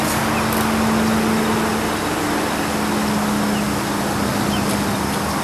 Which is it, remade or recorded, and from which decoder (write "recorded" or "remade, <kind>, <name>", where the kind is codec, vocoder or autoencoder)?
recorded